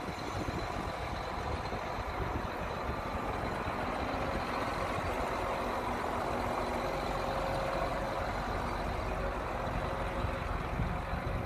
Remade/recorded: recorded